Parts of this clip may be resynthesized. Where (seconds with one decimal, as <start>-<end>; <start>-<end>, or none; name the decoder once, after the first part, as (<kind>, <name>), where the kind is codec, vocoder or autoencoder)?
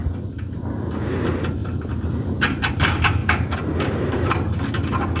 1.6-2.7 (vocoder, BigVGAN v2)